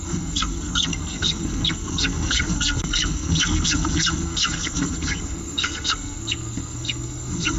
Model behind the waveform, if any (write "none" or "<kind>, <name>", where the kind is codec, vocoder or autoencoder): codec, SNAC